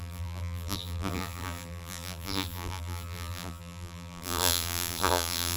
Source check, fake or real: fake